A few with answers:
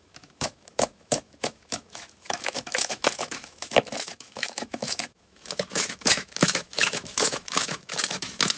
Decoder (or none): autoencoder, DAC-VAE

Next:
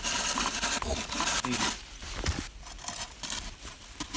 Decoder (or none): none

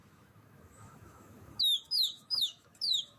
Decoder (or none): autoencoder, DAC-VAE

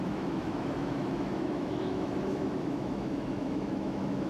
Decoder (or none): autoencoder, DAC-VAE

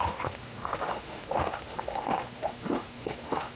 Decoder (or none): autoencoder, DAC-VAE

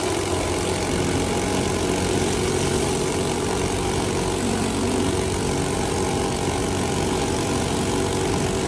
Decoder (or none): none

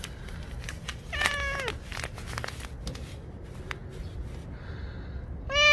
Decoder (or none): none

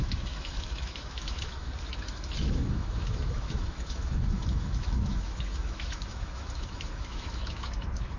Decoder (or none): autoencoder, DAC-VAE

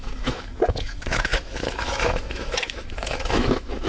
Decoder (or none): autoencoder, DAC-VAE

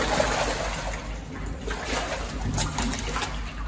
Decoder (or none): none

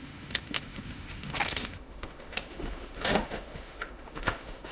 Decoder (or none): autoencoder, DAC-VAE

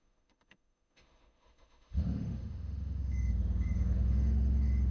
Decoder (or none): autoencoder, DAC-VAE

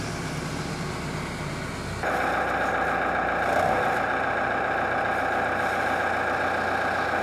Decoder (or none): none